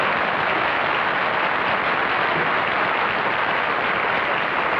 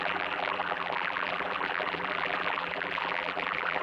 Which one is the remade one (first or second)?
second